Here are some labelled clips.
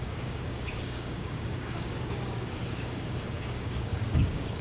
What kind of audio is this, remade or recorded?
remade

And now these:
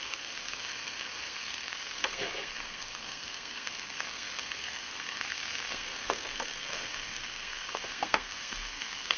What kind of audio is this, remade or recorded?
remade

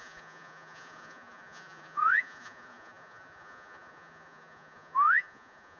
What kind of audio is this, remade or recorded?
remade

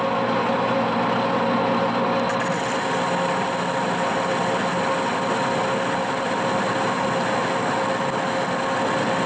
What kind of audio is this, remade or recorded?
recorded